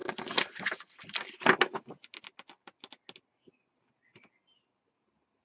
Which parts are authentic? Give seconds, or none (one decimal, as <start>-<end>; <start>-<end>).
0.0-5.4